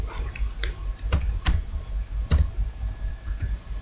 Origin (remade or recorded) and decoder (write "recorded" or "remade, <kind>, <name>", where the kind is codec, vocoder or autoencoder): remade, vocoder, BigVGAN v2